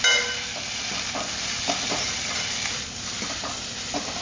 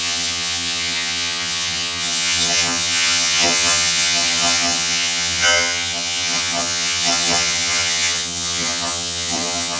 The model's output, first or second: second